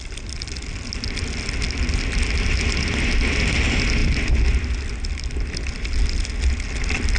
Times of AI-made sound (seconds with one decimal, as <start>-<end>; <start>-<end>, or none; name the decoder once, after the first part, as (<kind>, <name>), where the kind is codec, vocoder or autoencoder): none